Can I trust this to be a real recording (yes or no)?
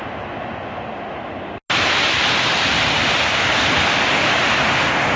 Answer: yes